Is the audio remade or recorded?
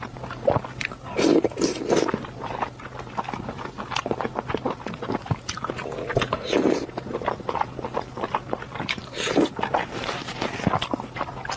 recorded